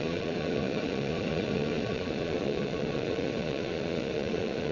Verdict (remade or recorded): remade